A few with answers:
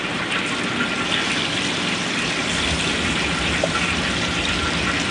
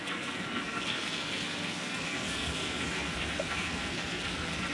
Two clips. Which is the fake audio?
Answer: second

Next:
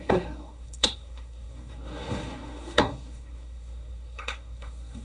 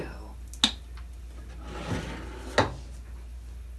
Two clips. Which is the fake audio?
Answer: first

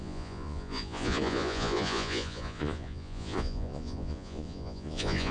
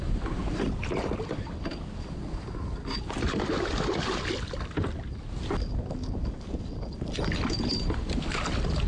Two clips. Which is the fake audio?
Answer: first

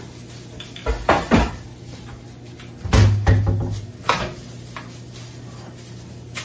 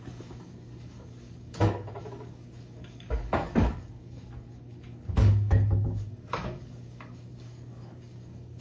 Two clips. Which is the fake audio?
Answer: second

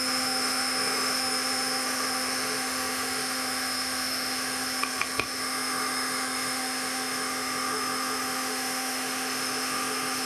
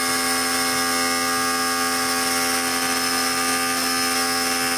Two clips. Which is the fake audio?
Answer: first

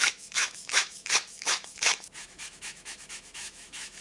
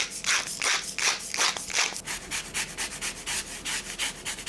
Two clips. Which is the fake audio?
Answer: first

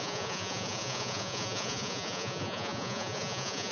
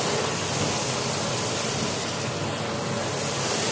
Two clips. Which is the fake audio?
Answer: first